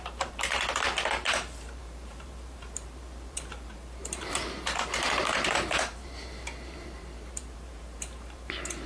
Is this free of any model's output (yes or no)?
no